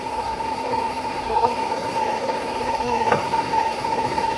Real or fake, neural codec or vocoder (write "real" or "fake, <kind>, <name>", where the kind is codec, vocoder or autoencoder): fake, codec, SNAC